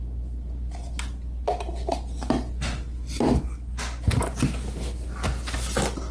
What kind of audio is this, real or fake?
real